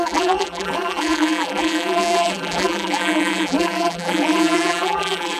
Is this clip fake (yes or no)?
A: yes